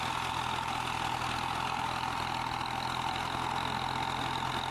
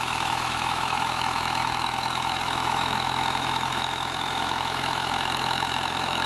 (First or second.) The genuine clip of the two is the first